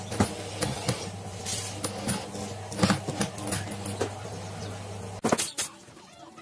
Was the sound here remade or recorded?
recorded